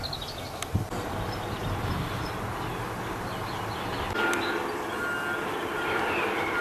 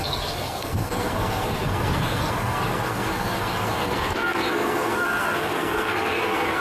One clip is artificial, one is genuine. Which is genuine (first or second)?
first